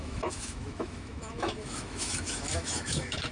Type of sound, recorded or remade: remade